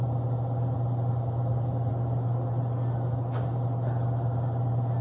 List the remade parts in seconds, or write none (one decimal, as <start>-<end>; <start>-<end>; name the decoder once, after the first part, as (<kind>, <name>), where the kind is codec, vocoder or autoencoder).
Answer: none